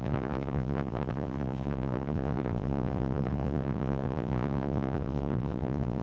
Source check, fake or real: fake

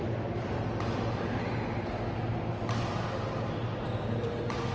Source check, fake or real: real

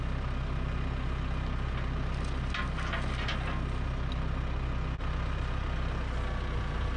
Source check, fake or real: real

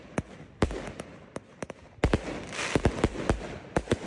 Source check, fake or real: real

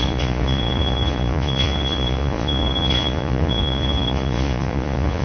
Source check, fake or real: fake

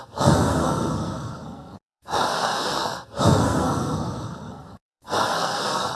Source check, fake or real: fake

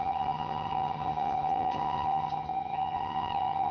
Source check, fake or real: fake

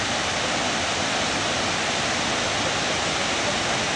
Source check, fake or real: real